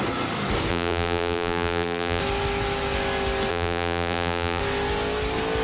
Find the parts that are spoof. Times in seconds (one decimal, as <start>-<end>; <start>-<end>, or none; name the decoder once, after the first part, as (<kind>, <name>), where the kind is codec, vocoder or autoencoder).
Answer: 0.7-2.2 (vocoder, BigVGAN v2); 3.5-4.6

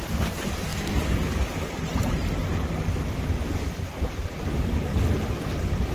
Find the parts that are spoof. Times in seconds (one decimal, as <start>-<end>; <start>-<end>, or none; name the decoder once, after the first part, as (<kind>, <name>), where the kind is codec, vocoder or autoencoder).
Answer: 0.0-0.7 (vocoder, BigVGAN v2); 1.8-2.4; 3.1-4.9

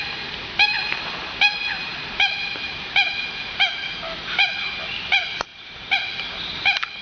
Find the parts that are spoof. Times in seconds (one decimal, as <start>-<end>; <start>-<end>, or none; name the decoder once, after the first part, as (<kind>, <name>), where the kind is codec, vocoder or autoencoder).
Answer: 5.5-6.6 (vocoder, BigVGAN v2)

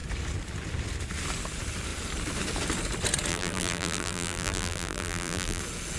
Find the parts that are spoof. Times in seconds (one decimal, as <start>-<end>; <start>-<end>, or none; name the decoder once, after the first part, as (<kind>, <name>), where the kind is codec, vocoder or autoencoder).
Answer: 3.3-5.6 (vocoder, BigVGAN v2)

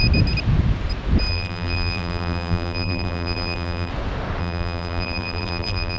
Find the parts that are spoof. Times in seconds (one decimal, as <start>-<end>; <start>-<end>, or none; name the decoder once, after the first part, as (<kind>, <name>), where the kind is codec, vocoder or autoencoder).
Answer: 1.3-3.9 (vocoder, BigVGAN v2); 4.4-6.0

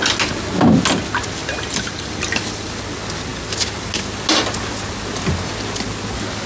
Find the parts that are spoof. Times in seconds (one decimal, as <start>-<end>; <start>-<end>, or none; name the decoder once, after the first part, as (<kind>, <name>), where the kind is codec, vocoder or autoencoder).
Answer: 1.4-2.8 (vocoder, BigVGAN v2)

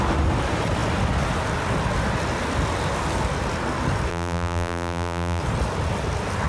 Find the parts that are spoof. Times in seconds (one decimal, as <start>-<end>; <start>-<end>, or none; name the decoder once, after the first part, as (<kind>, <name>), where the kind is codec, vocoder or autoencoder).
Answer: 4.1-5.4 (vocoder, BigVGAN v2)